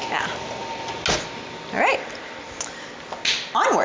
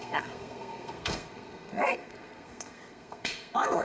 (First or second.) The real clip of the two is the first